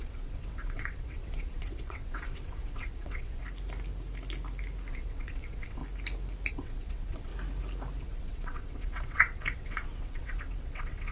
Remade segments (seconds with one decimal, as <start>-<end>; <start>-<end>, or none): 0.0-3.4; 4.9-5.8; 6.5-7.3; 8.0-11.1